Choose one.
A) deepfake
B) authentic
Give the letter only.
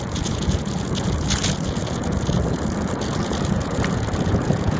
A